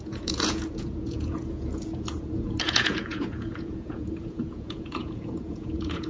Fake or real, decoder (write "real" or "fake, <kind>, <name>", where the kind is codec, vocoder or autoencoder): fake, vocoder, Vocos